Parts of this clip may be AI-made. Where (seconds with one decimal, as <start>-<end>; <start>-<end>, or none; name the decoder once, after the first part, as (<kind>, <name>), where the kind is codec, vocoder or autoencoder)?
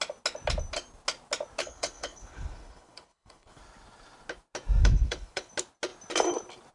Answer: 1.6-3.6 (codec, HILCodec); 4.8-5.5